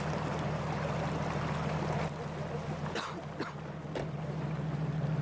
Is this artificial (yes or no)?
no